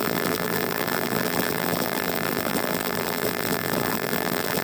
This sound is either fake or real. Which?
fake